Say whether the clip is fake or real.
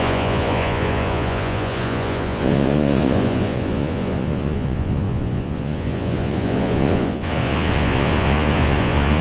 fake